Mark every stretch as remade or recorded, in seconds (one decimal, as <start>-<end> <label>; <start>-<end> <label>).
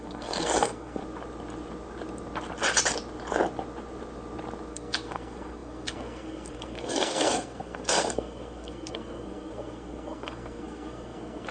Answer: 0.0-1.0 remade; 1.0-4.7 recorded; 4.7-11.5 remade